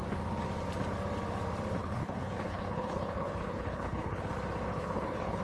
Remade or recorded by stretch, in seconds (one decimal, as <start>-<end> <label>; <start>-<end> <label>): 0.0-1.8 recorded; 1.8-4.3 remade; 4.3-4.7 recorded; 4.7-5.4 remade